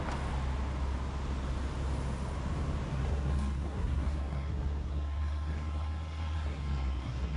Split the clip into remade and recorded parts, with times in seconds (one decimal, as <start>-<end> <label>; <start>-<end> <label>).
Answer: 0.0-2.9 recorded; 2.9-7.4 remade